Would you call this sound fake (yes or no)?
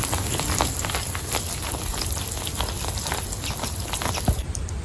no